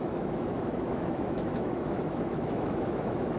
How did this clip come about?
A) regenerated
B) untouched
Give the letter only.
A